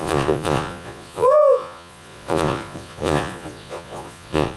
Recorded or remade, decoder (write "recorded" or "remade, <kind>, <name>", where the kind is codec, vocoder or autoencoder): remade, vocoder, Vocos